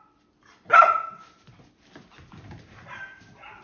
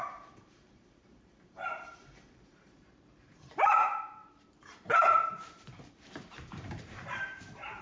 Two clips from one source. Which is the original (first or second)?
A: first